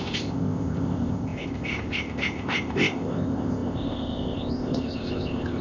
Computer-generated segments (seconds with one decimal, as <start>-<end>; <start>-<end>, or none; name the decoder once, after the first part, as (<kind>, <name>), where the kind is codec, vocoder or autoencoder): 0.0-5.6 (codec, ZipCodec)